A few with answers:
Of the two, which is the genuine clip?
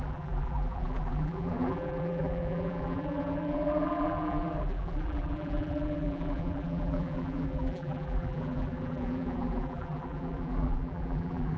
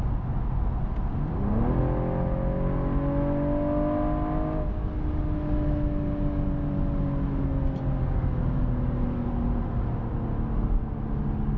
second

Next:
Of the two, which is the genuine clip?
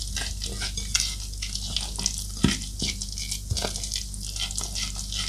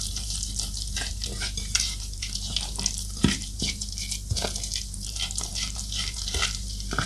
first